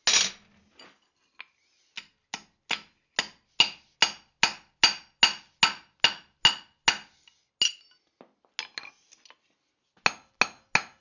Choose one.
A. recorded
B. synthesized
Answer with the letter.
A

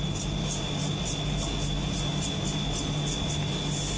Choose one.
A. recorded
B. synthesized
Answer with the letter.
A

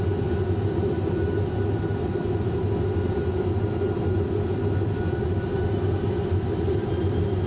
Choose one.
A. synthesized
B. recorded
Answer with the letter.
B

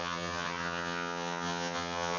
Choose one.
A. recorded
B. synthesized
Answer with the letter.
B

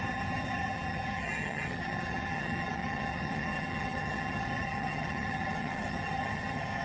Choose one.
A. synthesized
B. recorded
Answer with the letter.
A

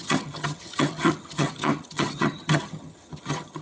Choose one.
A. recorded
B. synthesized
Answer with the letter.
B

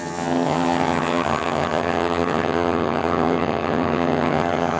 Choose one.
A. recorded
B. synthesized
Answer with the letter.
B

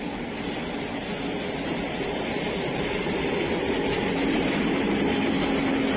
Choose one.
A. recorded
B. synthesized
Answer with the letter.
A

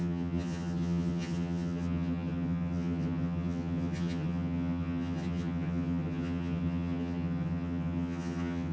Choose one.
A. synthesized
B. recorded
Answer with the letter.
A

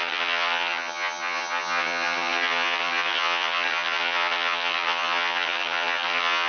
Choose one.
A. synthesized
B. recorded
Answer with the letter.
A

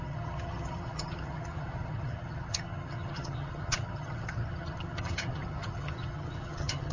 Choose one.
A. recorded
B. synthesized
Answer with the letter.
B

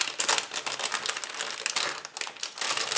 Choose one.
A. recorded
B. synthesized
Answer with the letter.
A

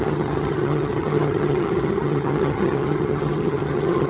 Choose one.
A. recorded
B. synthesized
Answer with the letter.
B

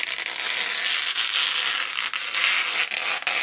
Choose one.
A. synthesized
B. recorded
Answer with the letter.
B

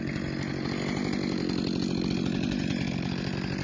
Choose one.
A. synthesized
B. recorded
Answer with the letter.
B